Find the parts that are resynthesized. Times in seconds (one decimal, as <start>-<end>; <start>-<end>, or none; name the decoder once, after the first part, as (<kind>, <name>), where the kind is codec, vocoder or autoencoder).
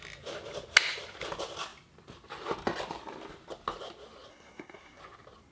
4.3-5.0 (codec, SNAC)